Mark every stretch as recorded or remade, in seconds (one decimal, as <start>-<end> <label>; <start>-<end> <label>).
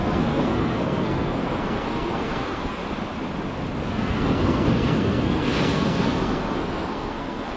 0.0-2.8 remade; 2.8-3.9 recorded; 3.9-7.6 remade